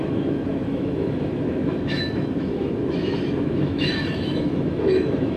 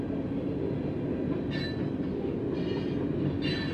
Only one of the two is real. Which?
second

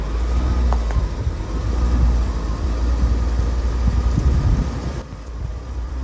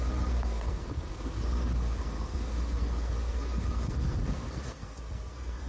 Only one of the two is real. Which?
first